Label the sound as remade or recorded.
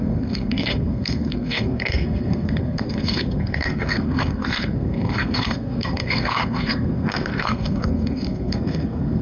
remade